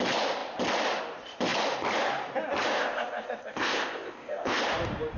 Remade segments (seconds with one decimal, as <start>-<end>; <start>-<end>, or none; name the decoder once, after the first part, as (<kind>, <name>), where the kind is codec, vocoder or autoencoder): 2.8-4.6 (codec, ZipCodec)